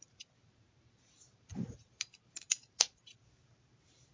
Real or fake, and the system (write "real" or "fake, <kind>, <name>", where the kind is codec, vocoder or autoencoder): fake, vocoder, BigVGAN v2